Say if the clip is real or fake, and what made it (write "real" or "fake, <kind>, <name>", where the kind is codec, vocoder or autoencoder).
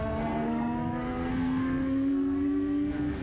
fake, codec, SNAC